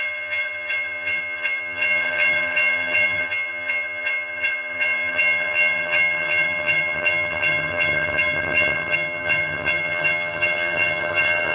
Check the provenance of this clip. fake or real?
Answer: fake